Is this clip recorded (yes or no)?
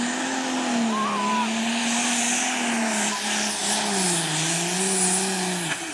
yes